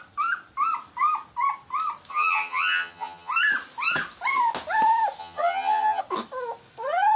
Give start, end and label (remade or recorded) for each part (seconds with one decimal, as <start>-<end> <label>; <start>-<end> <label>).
0.0-2.1 recorded; 2.1-3.3 remade; 3.3-5.2 recorded; 5.2-6.0 remade; 6.0-7.2 recorded